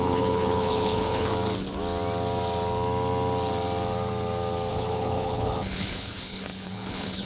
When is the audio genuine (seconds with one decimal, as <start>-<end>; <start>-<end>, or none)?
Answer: 1.3-4.7

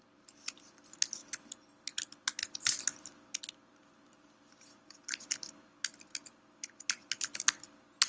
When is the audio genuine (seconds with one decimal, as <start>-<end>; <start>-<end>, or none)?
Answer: 0.0-8.1

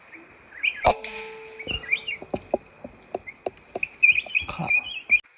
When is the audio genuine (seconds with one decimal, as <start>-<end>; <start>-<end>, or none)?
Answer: 0.0-5.4

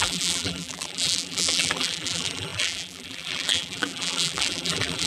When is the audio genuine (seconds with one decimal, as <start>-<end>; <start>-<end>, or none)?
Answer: none

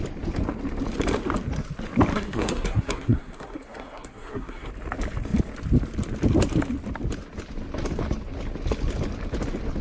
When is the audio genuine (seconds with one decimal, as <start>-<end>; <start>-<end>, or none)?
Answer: 0.0-2.1; 4.7-9.8

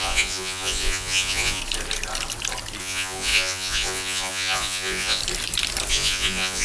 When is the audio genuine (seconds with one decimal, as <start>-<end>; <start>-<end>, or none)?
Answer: 1.6-2.8; 5.2-5.9

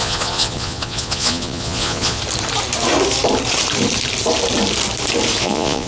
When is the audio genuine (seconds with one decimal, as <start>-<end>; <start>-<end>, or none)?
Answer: 2.2-5.4

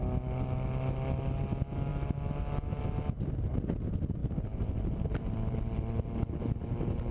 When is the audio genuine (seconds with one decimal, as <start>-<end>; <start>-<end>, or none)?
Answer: 0.0-4.2; 5.8-7.1